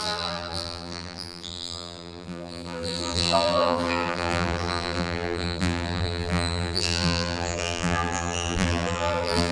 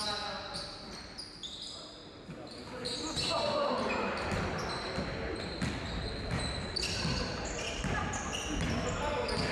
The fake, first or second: first